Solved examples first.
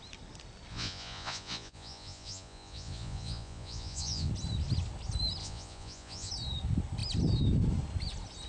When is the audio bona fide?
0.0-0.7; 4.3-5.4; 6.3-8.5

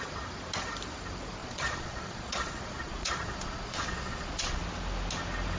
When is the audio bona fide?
0.0-1.4; 4.6-5.6

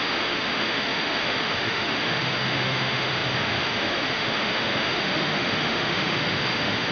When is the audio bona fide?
none

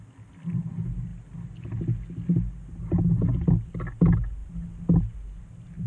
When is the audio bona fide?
0.0-5.9